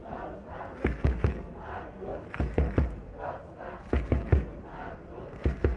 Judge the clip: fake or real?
fake